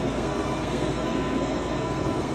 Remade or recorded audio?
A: remade